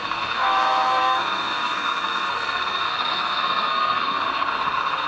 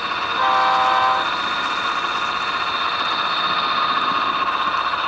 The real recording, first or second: second